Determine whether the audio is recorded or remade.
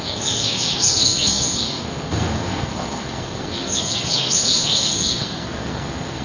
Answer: remade